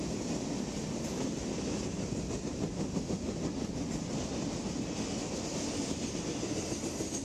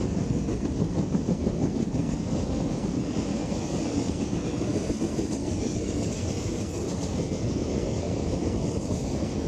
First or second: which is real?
first